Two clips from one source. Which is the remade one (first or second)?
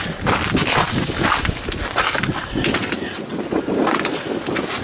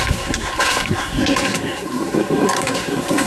second